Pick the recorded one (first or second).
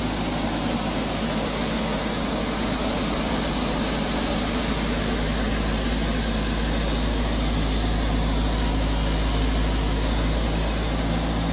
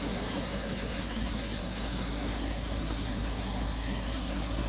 first